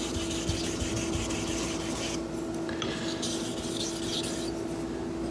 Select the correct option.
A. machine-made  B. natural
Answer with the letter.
B